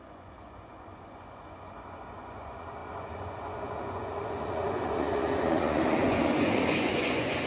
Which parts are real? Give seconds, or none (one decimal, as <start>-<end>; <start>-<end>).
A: none